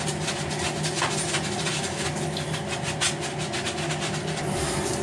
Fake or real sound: real